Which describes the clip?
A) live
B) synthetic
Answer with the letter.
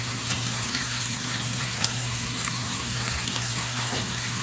B